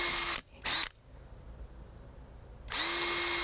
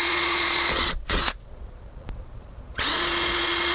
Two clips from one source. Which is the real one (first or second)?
first